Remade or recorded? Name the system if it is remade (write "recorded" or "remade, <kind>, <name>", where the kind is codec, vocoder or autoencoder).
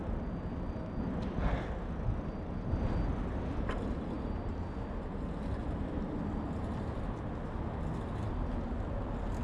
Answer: recorded